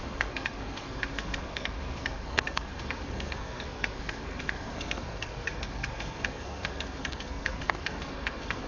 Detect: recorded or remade remade